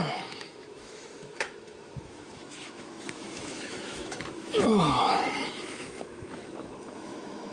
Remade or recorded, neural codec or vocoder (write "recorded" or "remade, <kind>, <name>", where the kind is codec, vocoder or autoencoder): remade, autoencoder, DAC-VAE